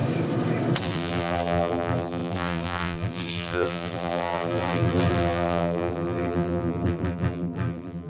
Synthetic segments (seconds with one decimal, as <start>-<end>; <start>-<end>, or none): 0.8-8.1